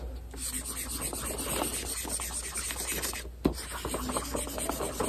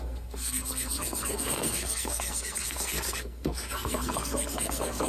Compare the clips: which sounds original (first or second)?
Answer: first